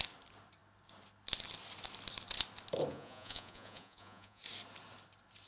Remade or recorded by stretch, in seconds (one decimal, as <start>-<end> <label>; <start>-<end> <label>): 0.0-2.9 recorded; 2.9-4.4 remade; 4.4-5.5 recorded